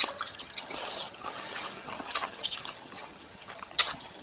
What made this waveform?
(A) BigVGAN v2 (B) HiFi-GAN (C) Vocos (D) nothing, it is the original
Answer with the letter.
B